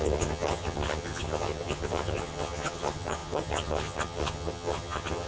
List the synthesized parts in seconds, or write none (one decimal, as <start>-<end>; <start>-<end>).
0.0-5.3